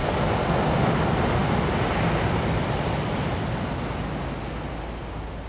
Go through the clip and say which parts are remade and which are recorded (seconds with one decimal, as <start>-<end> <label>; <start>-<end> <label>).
0.0-5.5 recorded